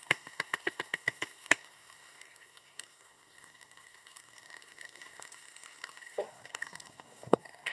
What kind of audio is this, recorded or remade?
remade